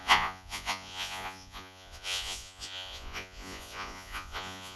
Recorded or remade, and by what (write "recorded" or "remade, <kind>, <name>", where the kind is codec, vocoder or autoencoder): remade, vocoder, Vocos